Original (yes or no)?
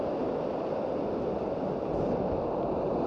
yes